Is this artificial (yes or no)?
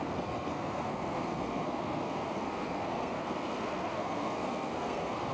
yes